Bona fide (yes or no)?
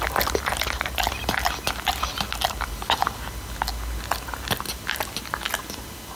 yes